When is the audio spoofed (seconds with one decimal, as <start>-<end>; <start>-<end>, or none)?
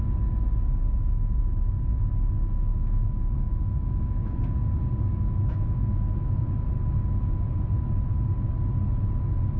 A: 2.7-4.4; 5.1-6.7